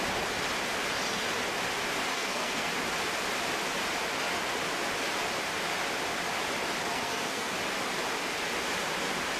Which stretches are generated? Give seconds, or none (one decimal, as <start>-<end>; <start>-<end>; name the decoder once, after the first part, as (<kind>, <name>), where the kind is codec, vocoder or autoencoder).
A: 2.1-2.7 (codec, SNAC); 6.9-7.5